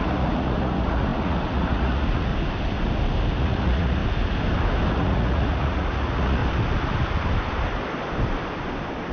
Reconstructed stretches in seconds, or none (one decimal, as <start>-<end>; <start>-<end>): 0.0-2.3; 3.4-4.0; 4.9-6.4